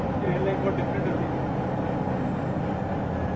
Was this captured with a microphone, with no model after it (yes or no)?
yes